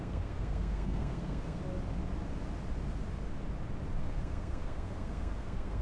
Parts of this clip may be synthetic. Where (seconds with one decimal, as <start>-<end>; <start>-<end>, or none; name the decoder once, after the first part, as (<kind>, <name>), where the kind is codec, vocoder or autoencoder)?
0.0-1.6 (codec, SNAC); 4.0-5.8